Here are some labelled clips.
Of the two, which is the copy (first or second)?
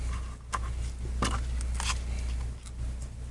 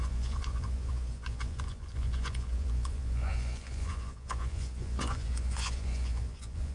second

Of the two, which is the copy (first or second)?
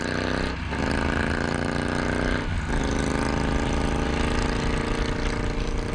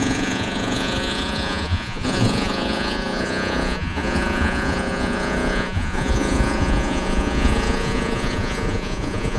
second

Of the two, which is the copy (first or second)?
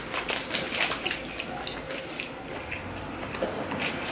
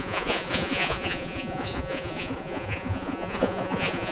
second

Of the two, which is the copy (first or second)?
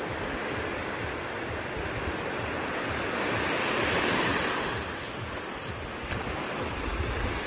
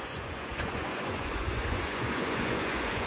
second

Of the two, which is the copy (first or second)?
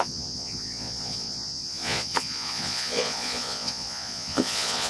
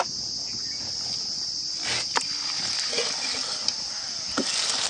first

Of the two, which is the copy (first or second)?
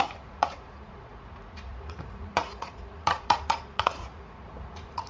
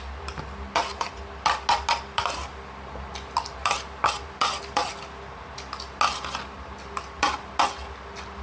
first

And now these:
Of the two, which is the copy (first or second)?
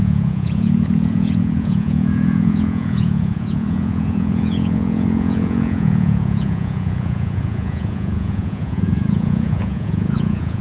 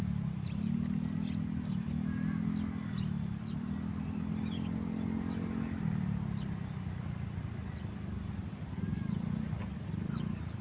first